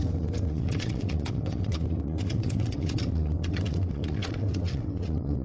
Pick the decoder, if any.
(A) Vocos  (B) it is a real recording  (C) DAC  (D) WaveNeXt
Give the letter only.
D